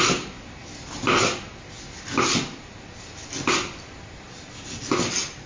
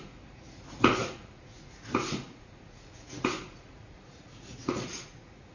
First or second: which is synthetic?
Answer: second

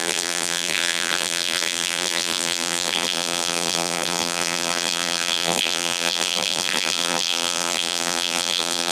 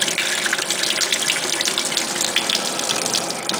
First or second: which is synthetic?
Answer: first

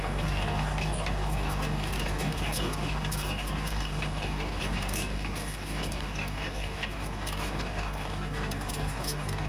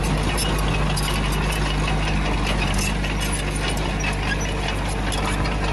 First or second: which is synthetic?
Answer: first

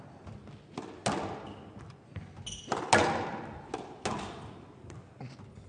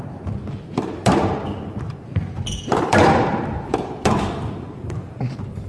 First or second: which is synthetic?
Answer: second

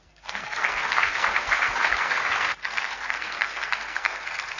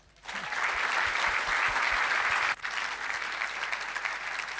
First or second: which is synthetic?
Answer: first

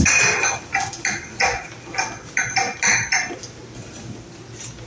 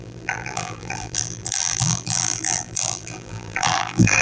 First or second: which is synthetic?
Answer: second